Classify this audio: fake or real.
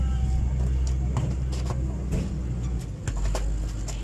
real